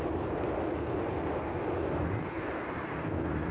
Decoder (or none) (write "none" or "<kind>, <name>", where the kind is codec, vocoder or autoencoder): none